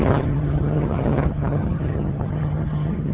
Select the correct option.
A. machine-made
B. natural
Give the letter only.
A